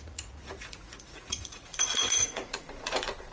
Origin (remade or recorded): remade